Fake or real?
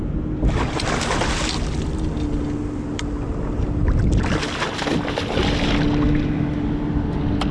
real